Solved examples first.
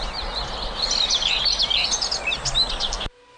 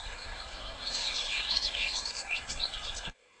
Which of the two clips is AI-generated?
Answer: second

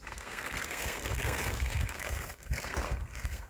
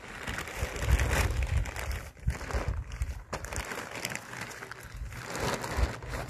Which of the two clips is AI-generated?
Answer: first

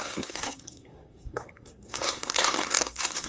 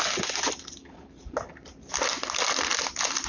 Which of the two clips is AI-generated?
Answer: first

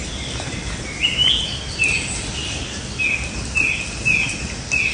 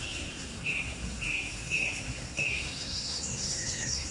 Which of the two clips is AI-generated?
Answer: second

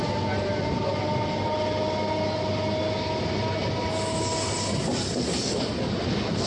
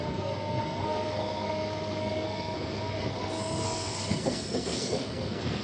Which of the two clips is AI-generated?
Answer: second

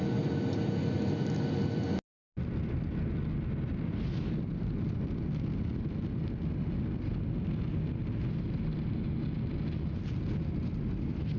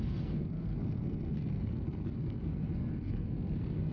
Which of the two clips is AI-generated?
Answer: second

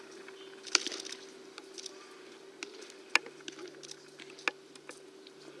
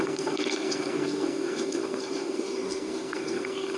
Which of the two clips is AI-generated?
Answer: second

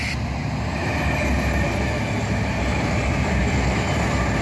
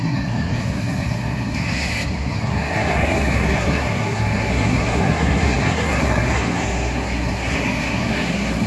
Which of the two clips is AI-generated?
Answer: second